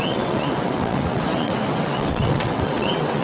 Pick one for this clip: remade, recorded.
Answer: remade